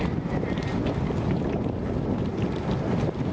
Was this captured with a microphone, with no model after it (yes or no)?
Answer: yes